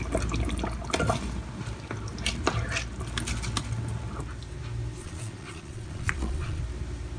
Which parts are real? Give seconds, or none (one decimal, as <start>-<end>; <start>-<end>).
0.0-5.0; 6.6-7.2